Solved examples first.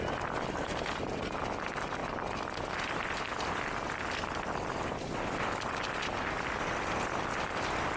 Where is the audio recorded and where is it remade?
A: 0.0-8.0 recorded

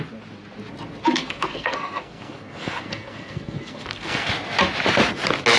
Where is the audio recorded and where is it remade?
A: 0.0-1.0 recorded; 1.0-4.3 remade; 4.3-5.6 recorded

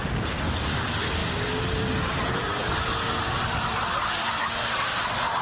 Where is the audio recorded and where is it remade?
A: 0.0-5.4 recorded

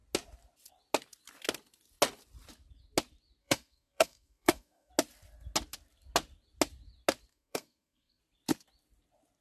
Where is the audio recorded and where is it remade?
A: 0.0-3.4 recorded; 3.4-4.9 remade; 4.9-7.3 recorded; 7.3-8.2 remade; 8.2-9.4 recorded

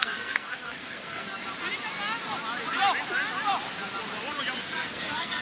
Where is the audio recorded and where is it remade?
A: 0.0-1.4 remade; 1.4-4.6 recorded; 4.6-5.4 remade

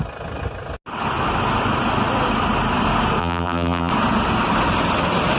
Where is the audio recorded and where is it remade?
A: 0.0-3.2 recorded; 3.2-3.9 remade; 3.9-5.4 recorded